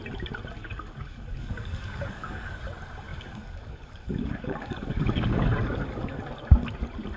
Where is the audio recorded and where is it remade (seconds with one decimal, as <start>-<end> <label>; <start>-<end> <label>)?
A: 0.0-0.6 recorded; 0.6-2.6 remade; 2.6-3.1 recorded; 3.1-6.2 remade; 6.2-7.2 recorded